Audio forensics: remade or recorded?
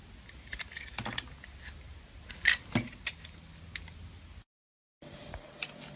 recorded